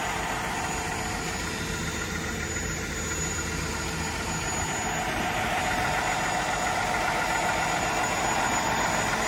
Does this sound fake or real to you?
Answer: real